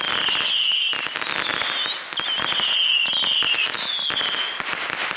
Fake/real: real